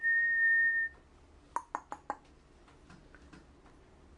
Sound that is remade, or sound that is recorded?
recorded